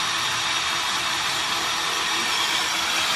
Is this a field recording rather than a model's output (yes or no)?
no